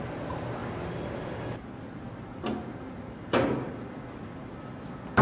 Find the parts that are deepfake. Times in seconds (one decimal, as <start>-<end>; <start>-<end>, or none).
none